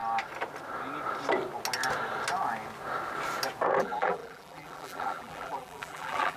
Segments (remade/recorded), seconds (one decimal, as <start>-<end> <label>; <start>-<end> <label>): 0.0-3.8 recorded; 3.8-6.4 remade